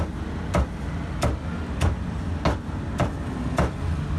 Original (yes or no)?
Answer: yes